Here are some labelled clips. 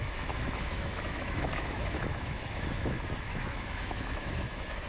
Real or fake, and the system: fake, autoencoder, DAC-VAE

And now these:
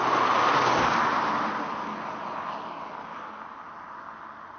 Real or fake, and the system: real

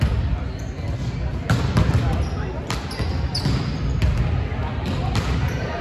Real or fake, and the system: real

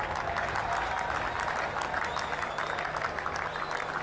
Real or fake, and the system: real